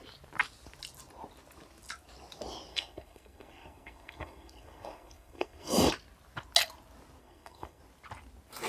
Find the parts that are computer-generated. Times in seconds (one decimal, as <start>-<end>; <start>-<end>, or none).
2.7-5.9; 7.2-7.8